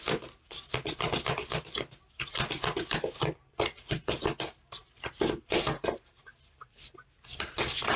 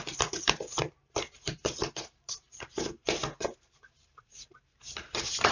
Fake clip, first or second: second